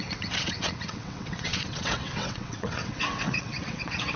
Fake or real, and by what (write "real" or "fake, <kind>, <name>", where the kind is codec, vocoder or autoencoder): fake, vocoder, WaveNeXt